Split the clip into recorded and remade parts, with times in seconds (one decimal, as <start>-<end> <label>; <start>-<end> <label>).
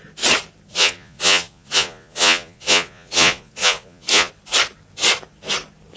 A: 0.0-0.7 recorded; 0.7-4.3 remade; 4.3-6.0 recorded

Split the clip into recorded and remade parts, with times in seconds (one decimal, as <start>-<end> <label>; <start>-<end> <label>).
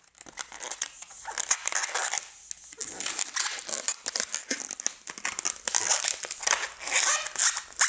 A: 0.0-0.7 recorded; 0.7-1.3 remade; 1.3-7.9 recorded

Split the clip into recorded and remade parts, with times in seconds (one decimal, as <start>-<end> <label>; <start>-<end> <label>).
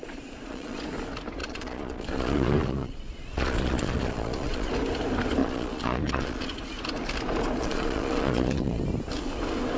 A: 0.0-0.8 remade; 0.8-1.4 recorded; 1.4-4.7 remade; 4.7-5.4 recorded; 5.4-6.6 remade; 6.6-7.6 recorded; 7.6-8.8 remade; 8.8-9.8 recorded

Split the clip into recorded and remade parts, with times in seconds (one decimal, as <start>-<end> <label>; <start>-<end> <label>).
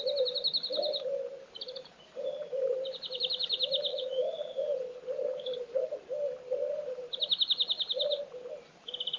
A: 0.0-3.9 recorded; 3.9-4.8 remade; 4.8-9.2 recorded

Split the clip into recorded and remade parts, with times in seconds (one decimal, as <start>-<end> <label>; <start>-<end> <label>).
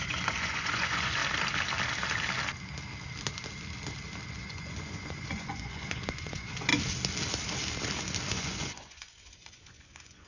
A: 0.0-1.2 remade; 1.2-4.3 recorded; 4.3-6.7 remade; 6.7-8.3 recorded; 8.3-10.3 remade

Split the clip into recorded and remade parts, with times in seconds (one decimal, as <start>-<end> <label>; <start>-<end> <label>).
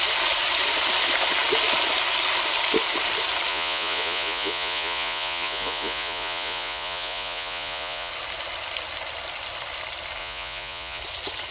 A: 0.0-3.5 recorded; 3.5-8.1 remade; 8.1-10.2 recorded; 10.2-11.0 remade; 11.0-11.5 recorded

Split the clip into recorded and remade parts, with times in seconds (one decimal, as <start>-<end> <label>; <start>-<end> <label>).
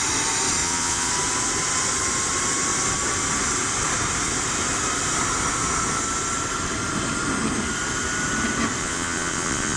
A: 0.0-0.6 recorded; 0.6-1.1 remade; 1.1-8.8 recorded; 8.8-9.8 remade